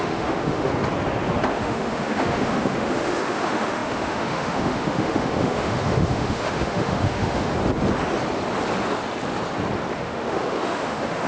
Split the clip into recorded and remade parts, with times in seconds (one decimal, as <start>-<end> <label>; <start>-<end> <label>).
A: 0.0-0.7 remade; 0.7-1.5 recorded; 1.5-7.5 remade; 7.5-10.0 recorded; 10.0-11.3 remade

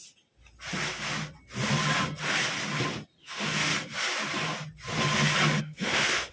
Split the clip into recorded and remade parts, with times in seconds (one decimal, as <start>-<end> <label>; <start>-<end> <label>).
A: 0.0-3.2 recorded; 3.2-3.7 remade; 3.7-5.6 recorded; 5.6-6.3 remade

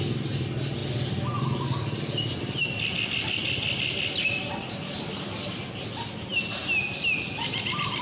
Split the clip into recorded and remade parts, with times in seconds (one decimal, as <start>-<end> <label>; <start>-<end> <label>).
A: 0.0-8.0 recorded

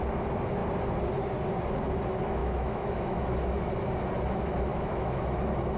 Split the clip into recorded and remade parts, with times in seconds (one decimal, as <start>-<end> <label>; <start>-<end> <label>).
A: 0.0-2.4 recorded; 2.4-3.7 remade; 3.7-4.7 recorded; 4.7-5.2 remade; 5.2-5.8 recorded

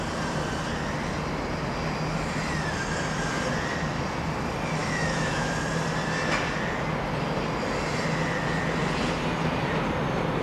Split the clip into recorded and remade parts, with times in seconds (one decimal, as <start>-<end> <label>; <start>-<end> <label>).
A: 0.0-4.8 recorded; 4.8-5.5 remade; 5.5-10.4 recorded

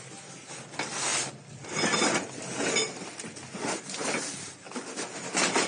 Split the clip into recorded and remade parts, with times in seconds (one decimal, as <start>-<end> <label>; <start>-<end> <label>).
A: 0.0-5.7 recorded

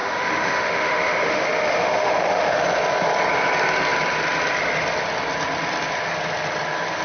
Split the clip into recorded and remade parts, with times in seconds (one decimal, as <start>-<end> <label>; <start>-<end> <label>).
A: 0.0-2.6 remade; 2.6-7.0 recorded